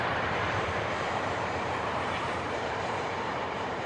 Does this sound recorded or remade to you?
remade